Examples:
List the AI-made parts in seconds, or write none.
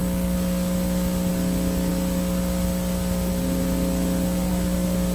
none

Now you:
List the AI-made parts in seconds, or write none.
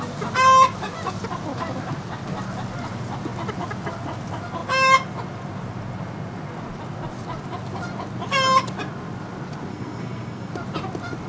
9.7-10.5 (codec, SNAC)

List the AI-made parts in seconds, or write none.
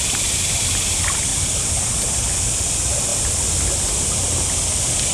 1.3-1.9 (vocoder, BigVGAN v2)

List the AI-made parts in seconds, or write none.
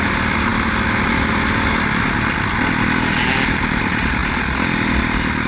none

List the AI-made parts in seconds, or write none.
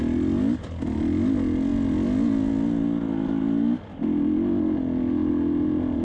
none